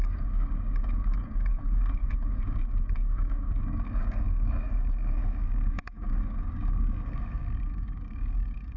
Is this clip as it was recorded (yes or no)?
no